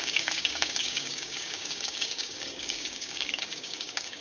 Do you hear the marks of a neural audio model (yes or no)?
yes